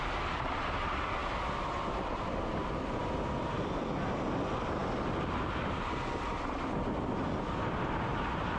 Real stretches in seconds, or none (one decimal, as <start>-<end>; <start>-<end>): 0.0-8.6